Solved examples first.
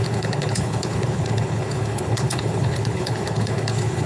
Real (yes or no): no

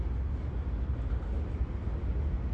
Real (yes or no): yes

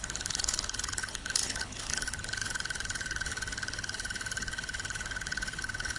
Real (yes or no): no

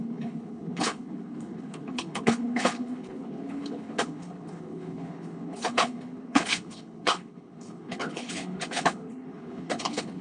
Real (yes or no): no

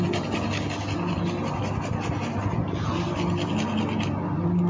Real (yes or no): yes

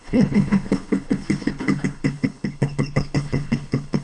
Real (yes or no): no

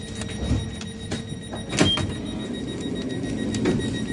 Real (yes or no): yes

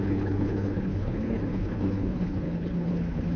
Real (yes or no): no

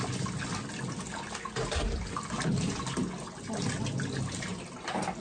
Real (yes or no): yes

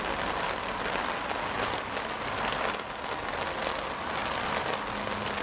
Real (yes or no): yes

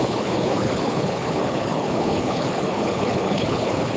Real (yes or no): no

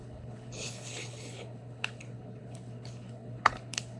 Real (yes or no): no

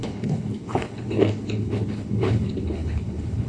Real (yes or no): no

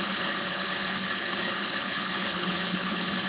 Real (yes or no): no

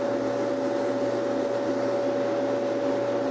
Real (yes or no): yes